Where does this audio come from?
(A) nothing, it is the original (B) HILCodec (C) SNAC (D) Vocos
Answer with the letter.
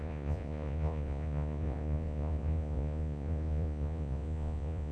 D